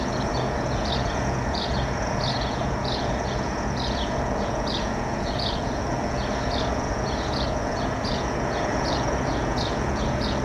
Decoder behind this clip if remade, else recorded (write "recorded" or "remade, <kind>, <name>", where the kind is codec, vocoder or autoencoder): remade, vocoder, Vocos